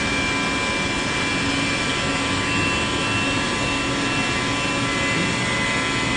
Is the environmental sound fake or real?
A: real